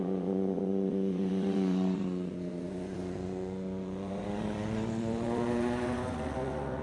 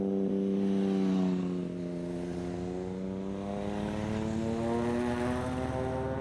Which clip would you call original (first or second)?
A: second